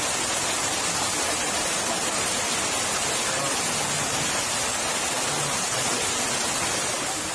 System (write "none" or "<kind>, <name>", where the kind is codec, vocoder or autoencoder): none